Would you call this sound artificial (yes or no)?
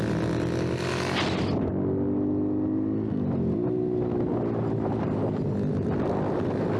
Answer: no